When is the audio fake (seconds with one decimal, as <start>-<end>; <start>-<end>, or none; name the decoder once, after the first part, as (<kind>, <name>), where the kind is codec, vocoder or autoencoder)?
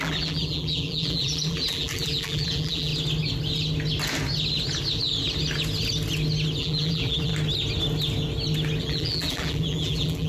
0.0-2.9 (vocoder, BigVGAN v2); 6.6-7.3; 8.8-10.3